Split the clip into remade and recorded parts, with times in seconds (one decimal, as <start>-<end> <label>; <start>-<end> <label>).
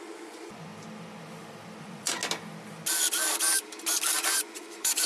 0.0-0.7 remade; 0.7-1.8 recorded; 1.8-2.2 remade; 2.2-4.3 recorded; 4.3-5.1 remade